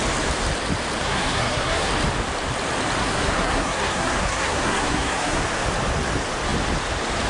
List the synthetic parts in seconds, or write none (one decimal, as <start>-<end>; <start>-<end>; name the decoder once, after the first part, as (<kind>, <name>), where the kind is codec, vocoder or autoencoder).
1.0-1.9 (codec, SNAC); 3.0-5.4